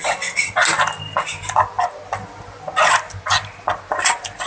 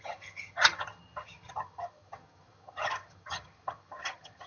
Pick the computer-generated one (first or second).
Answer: second